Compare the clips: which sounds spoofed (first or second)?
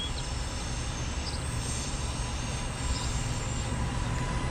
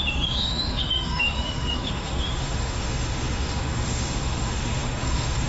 second